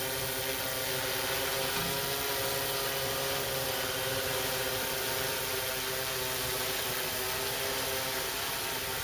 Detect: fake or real real